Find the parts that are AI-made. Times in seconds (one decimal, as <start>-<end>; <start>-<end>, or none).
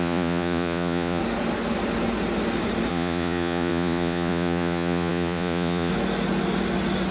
0.0-1.2; 2.9-5.9